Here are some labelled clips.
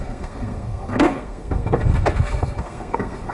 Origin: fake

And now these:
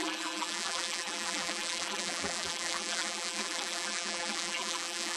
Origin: fake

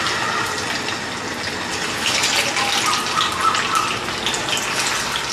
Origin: real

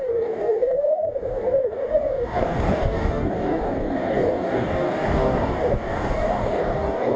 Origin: fake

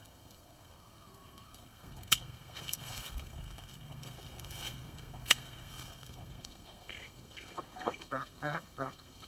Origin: fake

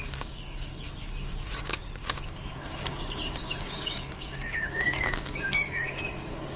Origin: fake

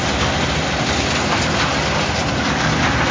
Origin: real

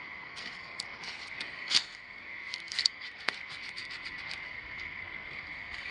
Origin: fake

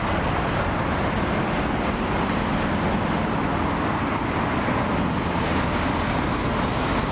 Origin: real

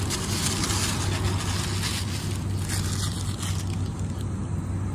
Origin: real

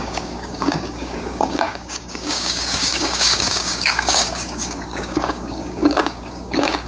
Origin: fake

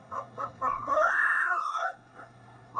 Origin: fake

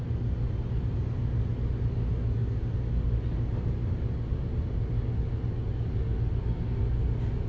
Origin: real